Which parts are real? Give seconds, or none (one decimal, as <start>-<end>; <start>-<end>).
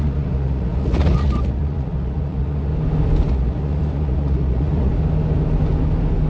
2.7-3.3; 4.9-6.3